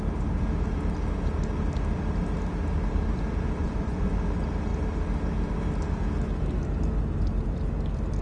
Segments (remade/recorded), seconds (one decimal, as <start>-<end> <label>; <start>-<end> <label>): 0.0-3.6 recorded; 3.6-4.1 remade; 4.1-8.2 recorded